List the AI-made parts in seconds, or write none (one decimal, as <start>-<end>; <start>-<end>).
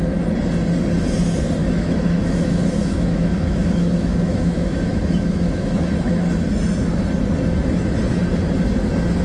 1.6-6.1